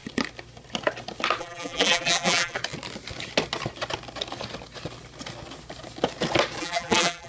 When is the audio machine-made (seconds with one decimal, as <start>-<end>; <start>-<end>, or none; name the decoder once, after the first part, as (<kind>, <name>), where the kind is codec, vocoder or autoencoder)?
1.4-2.6 (vocoder, BigVGAN v2); 6.6-7.3